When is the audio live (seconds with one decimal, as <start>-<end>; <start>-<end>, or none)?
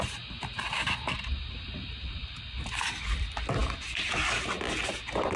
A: 0.0-5.4